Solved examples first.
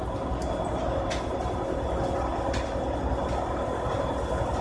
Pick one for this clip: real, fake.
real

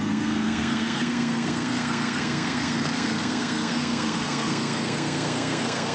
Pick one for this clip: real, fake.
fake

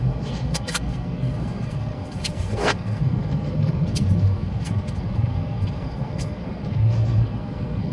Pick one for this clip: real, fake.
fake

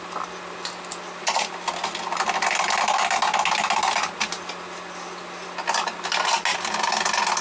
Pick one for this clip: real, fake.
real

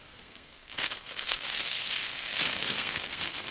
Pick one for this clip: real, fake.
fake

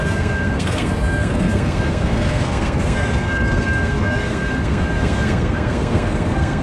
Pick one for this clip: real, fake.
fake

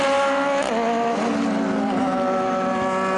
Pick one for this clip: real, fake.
real